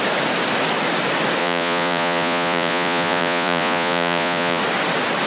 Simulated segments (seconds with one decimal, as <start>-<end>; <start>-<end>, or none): 1.4-4.6